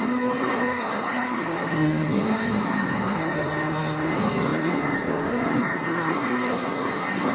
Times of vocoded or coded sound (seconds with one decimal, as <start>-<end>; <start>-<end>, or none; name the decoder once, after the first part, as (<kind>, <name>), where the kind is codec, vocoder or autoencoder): 0.0-7.3 (codec, SNAC)